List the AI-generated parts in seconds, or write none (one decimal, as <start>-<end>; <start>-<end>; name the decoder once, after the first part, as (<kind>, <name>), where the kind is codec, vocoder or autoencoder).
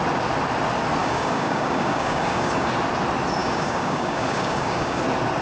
1.0-2.7 (codec, DAC); 3.4-5.0